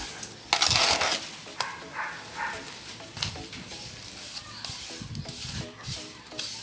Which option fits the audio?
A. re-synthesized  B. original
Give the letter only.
B